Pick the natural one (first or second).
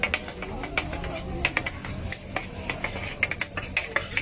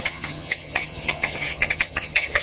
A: first